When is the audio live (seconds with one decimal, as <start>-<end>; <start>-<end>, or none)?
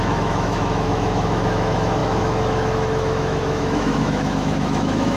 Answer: none